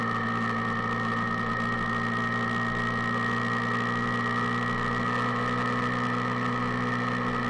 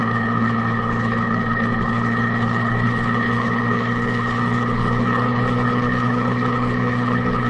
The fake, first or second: second